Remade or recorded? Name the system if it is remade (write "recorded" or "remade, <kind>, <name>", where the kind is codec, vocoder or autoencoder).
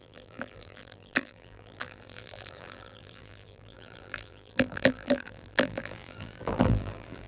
remade, vocoder, BigVGAN v2